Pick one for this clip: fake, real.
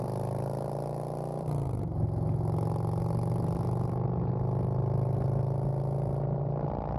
real